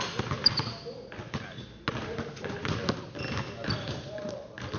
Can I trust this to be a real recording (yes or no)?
yes